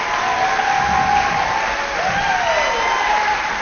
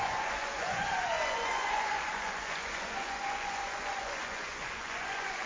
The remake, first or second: second